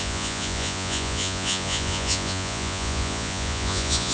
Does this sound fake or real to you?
fake